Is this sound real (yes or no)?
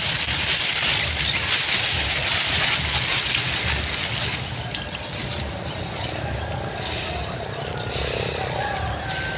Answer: yes